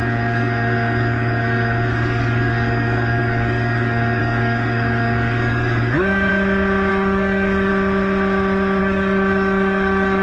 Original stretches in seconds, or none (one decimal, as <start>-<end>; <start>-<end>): 6.3-6.9; 7.7-8.8